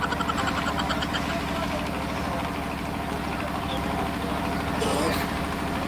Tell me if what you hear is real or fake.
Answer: real